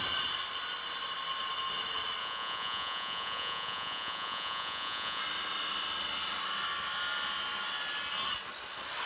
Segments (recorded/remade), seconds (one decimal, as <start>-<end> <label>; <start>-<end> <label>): 0.0-2.2 recorded; 2.2-5.2 remade; 5.2-9.1 recorded